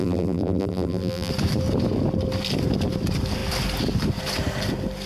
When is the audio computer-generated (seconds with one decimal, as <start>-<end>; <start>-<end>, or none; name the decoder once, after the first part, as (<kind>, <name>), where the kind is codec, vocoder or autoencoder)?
0.0-1.3 (vocoder, BigVGAN v2)